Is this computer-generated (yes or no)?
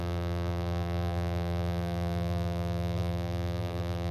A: yes